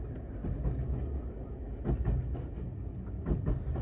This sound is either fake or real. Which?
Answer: real